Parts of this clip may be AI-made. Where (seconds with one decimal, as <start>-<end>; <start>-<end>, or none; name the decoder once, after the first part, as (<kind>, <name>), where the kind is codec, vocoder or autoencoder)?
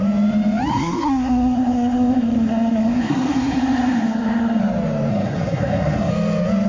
0.7-4.6 (codec, SNAC); 5.1-6.1